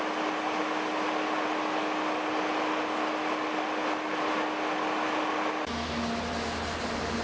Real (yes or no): yes